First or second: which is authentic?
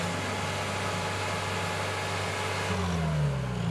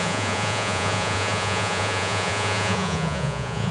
first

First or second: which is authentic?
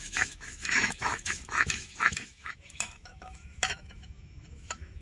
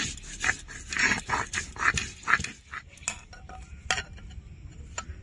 second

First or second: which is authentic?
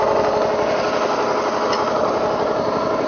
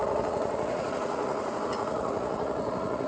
first